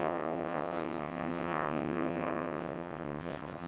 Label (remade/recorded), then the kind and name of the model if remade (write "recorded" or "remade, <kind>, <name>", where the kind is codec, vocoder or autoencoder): remade, vocoder, WaveNeXt